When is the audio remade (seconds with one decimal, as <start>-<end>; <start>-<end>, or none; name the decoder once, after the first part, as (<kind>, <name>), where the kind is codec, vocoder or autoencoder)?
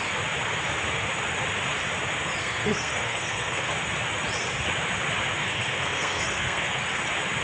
2.4-3.7 (codec, SNAC); 5.4-6.8